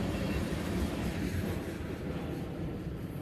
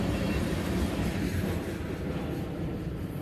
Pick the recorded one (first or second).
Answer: second